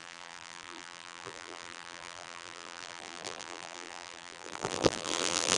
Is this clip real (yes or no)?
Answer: no